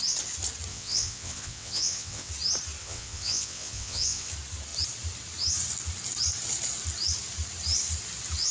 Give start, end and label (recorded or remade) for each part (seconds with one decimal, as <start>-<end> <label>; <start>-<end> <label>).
0.0-0.7 recorded; 0.7-2.3 remade; 2.3-2.8 recorded; 2.8-4.3 remade; 4.3-8.5 recorded